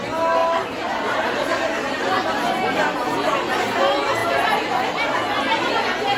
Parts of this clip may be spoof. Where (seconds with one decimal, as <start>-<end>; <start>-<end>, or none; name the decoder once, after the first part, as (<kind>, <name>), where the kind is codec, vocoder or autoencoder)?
0.4-1.6 (vocoder, BigVGAN v2)